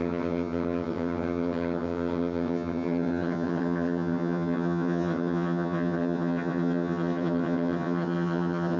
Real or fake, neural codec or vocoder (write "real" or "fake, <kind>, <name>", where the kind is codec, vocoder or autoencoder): fake, vocoder, HiFi-GAN